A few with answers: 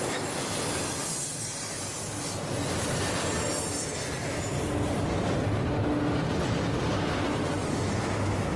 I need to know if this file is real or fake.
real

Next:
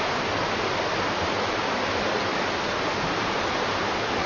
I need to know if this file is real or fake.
real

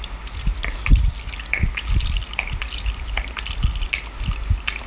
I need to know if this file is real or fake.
real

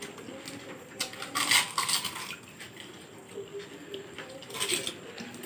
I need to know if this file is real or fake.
real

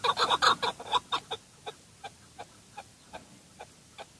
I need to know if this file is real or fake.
real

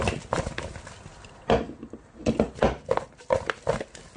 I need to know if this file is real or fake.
real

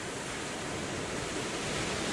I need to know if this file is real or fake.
real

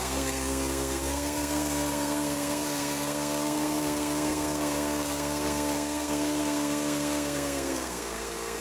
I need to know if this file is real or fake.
fake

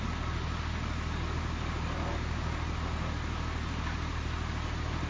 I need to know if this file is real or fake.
real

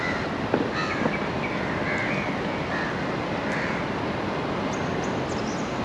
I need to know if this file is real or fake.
real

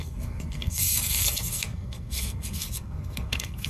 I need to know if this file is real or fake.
fake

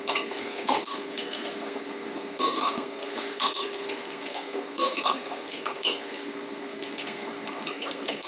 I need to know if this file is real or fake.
fake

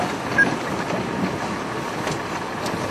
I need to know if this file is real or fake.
real